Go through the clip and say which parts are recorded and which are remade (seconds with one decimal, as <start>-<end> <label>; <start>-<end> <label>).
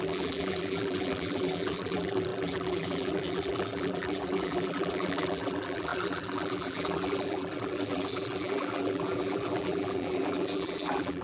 0.0-11.2 remade